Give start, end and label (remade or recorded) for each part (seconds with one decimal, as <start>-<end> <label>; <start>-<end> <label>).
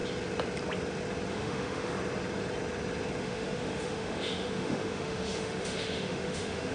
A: 0.0-1.3 recorded; 1.3-1.9 remade; 1.9-3.2 recorded; 3.2-6.7 remade